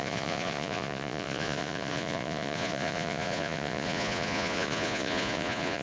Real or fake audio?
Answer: fake